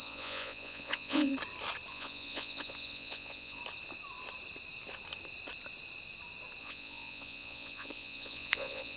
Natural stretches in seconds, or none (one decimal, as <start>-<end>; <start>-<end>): 1.3-1.9; 3.6-6.6